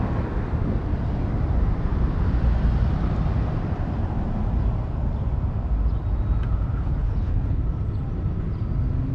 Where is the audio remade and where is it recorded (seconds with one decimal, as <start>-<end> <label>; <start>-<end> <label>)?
0.0-6.7 recorded; 6.7-7.6 remade; 7.6-9.1 recorded

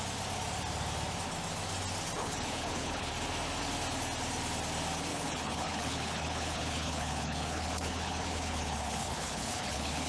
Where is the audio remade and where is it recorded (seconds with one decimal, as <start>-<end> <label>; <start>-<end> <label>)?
0.0-2.2 recorded; 2.2-3.1 remade; 3.1-5.1 recorded; 5.1-10.1 remade

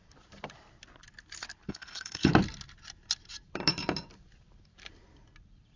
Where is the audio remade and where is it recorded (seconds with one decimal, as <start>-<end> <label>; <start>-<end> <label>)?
0.0-1.7 recorded; 1.7-2.3 remade; 2.3-5.8 recorded

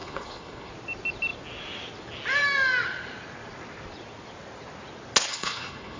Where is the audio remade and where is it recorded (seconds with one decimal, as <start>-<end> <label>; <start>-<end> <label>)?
0.0-0.7 remade; 0.7-5.3 recorded; 5.3-6.0 remade

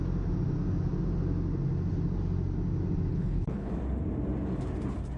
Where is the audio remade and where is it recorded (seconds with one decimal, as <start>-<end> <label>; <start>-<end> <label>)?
0.0-3.1 recorded; 3.1-3.7 remade; 3.7-5.2 recorded

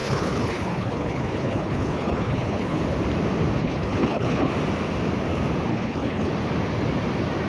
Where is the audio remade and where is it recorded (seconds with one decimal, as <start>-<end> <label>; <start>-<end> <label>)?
0.0-2.8 remade; 2.8-3.6 recorded; 3.6-4.5 remade; 4.5-5.7 recorded; 5.7-6.3 remade; 6.3-7.5 recorded